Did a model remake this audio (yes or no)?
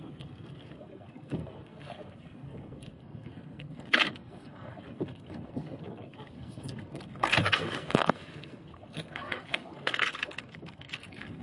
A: yes